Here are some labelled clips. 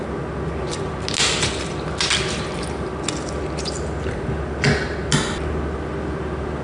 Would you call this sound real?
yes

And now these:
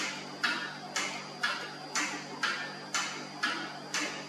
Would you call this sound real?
yes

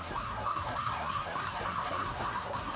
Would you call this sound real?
no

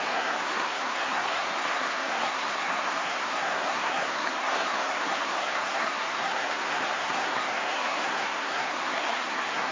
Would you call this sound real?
no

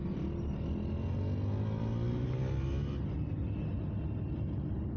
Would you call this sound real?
yes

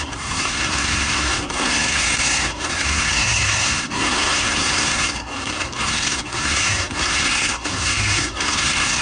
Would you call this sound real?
no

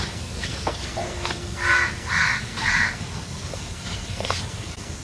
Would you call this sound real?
no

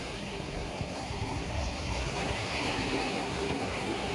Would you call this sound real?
no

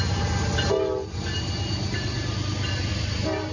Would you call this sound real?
yes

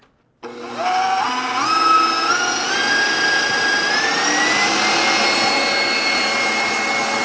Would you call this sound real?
yes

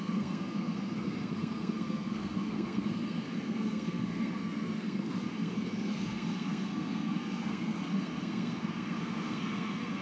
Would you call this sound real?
no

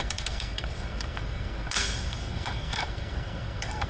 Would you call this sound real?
no